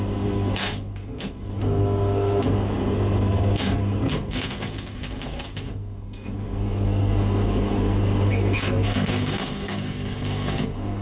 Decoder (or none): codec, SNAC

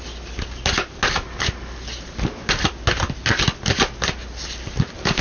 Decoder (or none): none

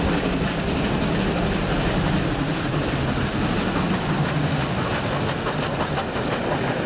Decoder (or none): none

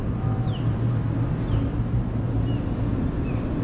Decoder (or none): none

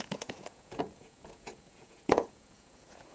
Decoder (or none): vocoder, Vocos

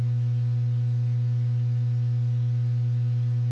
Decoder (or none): none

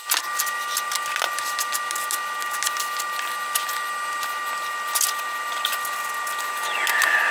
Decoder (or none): none